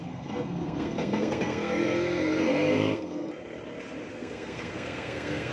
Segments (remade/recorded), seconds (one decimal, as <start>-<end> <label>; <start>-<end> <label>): 0.0-3.3 remade; 3.3-4.1 recorded; 4.1-5.5 remade